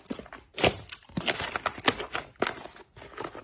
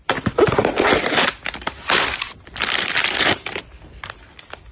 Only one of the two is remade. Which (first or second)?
second